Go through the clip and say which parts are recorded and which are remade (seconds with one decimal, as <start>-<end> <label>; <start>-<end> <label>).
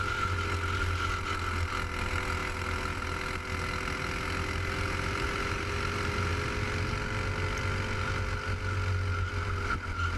0.0-10.2 recorded